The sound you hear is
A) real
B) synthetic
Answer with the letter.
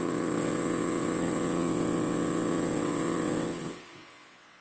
B